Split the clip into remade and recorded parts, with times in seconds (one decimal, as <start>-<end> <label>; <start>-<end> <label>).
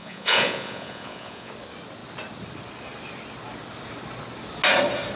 0.0-1.5 remade; 1.5-5.2 recorded